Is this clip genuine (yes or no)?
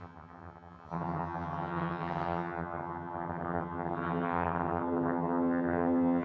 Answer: no